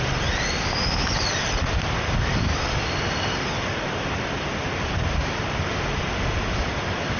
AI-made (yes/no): no